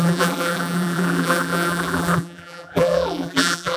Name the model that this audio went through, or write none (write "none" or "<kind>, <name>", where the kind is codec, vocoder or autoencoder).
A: vocoder, BigVGAN v2